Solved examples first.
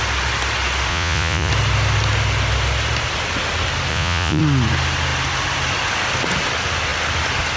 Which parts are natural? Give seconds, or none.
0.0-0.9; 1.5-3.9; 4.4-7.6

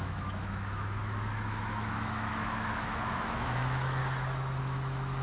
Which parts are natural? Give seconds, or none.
4.0-4.6

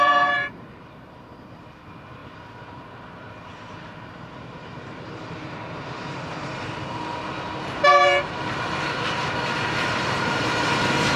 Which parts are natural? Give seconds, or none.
none